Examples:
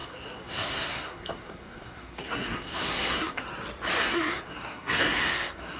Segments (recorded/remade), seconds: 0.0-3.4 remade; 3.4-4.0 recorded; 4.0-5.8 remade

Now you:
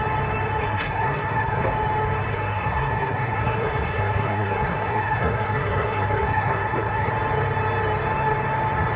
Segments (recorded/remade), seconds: 0.0-0.6 recorded; 0.6-1.6 remade; 1.6-2.3 recorded; 2.3-7.1 remade; 7.1-9.0 recorded

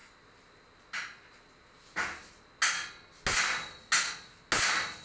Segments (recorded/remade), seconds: 0.0-5.0 recorded

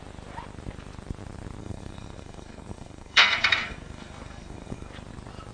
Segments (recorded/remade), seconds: 0.0-1.6 recorded; 1.6-4.9 remade; 4.9-5.5 recorded